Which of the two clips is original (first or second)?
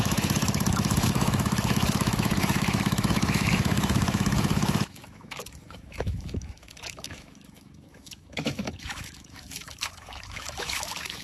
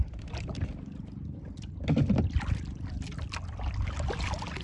second